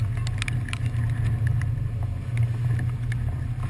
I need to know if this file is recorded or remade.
recorded